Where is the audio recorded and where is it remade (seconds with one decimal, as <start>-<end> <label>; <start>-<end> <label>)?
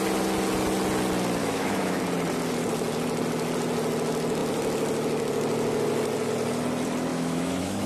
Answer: 0.0-1.4 recorded; 1.4-2.0 remade; 2.0-7.1 recorded; 7.1-7.9 remade